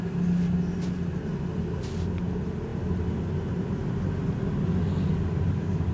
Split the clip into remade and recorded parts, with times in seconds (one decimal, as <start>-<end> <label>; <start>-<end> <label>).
0.0-5.9 recorded